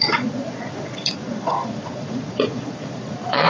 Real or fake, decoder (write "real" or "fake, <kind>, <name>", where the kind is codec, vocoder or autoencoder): fake, vocoder, Vocos